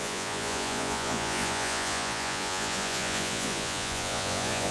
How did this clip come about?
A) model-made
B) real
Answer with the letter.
A